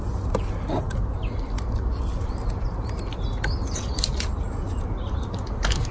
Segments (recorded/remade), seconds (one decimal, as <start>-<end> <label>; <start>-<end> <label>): 0.0-5.9 recorded